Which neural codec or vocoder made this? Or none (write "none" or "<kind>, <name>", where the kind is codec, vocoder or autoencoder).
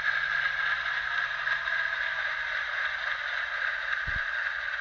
none